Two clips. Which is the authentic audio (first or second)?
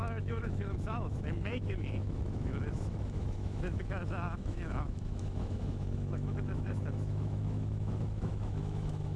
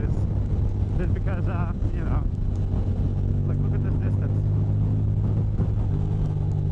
second